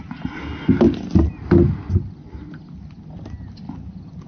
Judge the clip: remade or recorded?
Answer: recorded